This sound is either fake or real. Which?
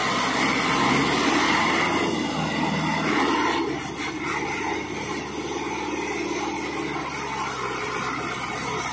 real